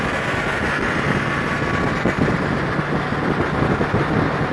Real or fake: real